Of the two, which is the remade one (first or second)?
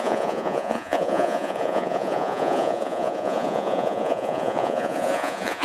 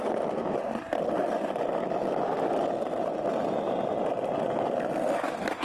first